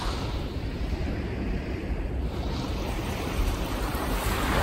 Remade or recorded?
remade